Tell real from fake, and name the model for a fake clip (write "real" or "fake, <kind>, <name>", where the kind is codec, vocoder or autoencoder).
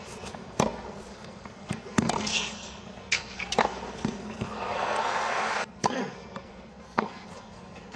fake, codec, SNAC